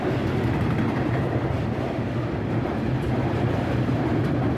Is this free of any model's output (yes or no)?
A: yes